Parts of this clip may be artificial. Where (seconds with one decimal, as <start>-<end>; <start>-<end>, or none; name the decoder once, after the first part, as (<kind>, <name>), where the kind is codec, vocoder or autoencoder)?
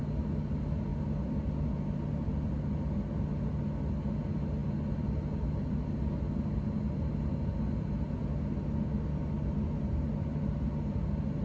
none